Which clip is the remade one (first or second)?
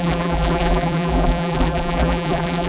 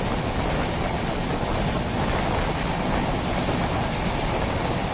first